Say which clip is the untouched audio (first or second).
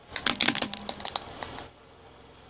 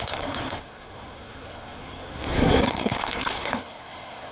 first